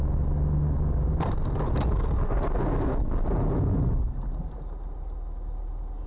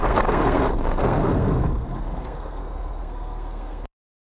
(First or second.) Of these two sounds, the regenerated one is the second